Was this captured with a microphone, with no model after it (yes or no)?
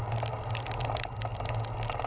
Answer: yes